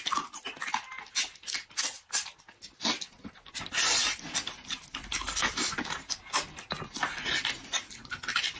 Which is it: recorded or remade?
recorded